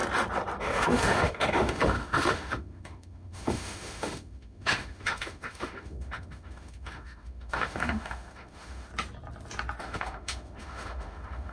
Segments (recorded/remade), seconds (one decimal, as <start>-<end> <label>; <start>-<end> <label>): 0.0-0.6 recorded; 0.6-8.9 remade; 8.9-9.8 recorded; 9.8-11.5 remade